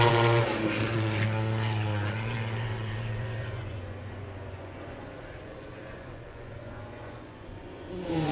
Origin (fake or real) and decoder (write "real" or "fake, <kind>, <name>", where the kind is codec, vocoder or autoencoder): fake, vocoder, Vocos